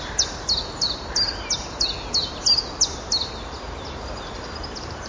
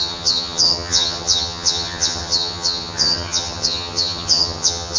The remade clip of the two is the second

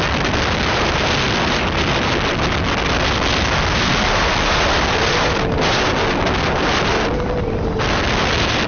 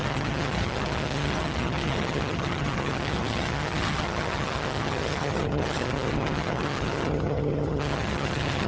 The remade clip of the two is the second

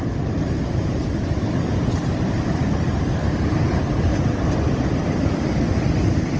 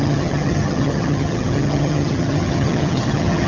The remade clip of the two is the second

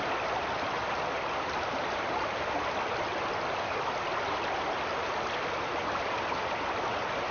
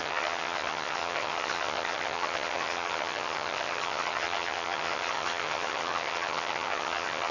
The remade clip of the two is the second